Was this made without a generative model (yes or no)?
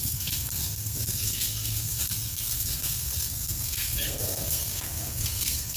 no